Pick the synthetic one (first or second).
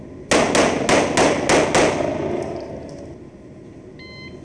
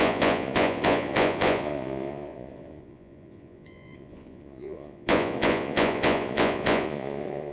second